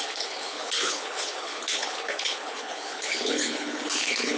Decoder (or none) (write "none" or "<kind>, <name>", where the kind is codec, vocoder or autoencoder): codec, HILCodec